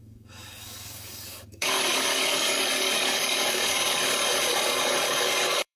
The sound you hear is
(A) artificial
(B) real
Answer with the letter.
A